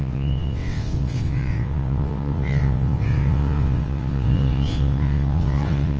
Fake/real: fake